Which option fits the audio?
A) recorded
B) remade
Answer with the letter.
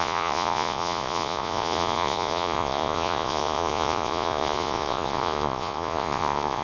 B